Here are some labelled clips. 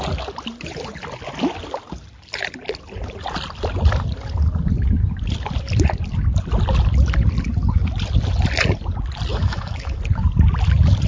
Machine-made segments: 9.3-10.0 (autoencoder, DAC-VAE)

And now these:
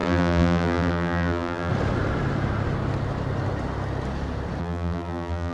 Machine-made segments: 0.0-1.7 (vocoder, BigVGAN v2); 4.6-5.5

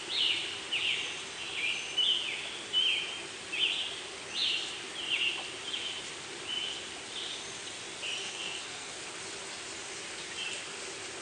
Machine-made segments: 8.2-9.0 (codec, SNAC)